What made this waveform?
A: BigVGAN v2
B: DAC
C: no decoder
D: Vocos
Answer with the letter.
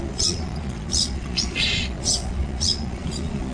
D